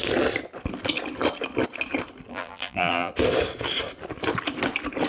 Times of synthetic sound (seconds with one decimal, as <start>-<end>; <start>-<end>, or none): 2.3-3.1